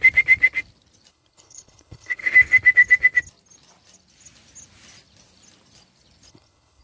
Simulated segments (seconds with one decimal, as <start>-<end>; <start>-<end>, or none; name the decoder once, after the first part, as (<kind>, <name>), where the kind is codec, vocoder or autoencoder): 1.1-2.2 (codec, HILCodec); 6.3-6.8